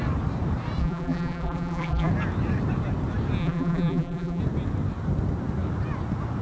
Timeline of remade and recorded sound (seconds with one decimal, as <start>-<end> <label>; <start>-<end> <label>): 0.0-0.8 recorded; 0.8-2.1 remade; 2.1-3.4 recorded; 3.4-4.4 remade; 4.4-6.4 recorded